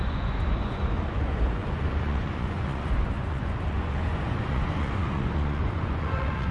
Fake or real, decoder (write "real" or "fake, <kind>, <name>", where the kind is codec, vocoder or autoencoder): fake, vocoder, Vocos